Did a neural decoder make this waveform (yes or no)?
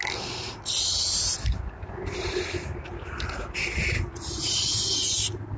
no